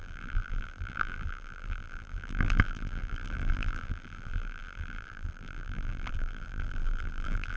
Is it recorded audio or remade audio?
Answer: remade